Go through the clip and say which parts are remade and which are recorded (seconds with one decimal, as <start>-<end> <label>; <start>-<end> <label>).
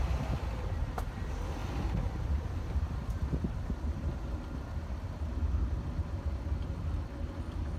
0.0-7.8 recorded